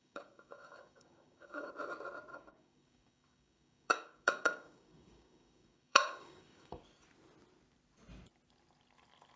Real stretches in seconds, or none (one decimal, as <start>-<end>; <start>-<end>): 1.7-2.3; 6.8-9.4